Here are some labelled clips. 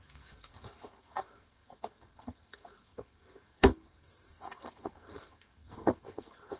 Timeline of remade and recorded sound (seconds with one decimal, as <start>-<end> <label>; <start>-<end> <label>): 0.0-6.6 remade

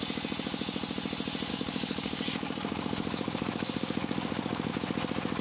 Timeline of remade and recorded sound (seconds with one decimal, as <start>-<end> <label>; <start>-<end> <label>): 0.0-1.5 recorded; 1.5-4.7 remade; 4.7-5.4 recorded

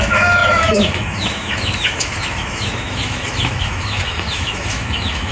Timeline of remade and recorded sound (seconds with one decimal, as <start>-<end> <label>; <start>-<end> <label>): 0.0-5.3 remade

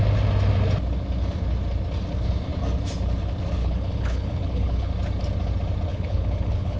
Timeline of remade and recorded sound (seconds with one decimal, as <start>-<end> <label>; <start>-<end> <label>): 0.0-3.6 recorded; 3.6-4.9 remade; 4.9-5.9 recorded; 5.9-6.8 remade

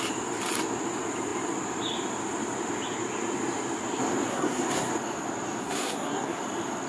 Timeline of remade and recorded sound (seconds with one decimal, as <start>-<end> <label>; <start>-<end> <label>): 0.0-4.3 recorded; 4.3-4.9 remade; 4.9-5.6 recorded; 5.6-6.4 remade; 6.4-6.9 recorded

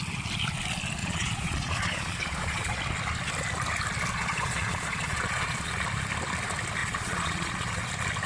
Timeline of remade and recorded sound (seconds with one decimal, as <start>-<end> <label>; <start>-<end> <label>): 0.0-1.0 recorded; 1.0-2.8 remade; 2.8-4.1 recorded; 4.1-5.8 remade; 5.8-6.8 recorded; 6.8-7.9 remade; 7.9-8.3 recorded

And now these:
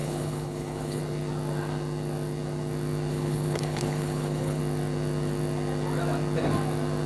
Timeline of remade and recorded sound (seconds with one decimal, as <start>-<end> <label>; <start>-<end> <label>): 0.0-1.0 remade; 1.0-3.1 recorded; 3.1-4.6 remade; 4.6-7.1 recorded

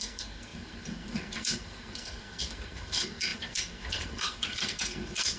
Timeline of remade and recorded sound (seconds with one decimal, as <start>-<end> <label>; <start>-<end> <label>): 0.0-5.4 remade